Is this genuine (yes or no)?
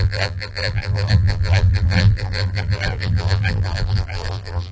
no